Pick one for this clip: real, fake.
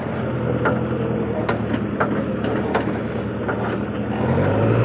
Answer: real